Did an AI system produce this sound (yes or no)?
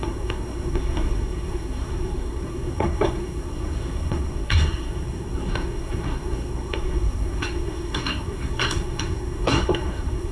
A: yes